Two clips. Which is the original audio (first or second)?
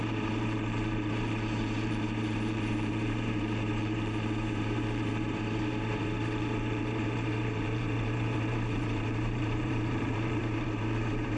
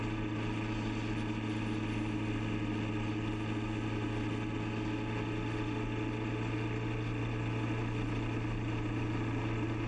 second